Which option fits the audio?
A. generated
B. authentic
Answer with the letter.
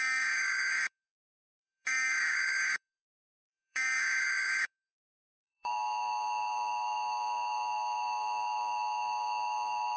A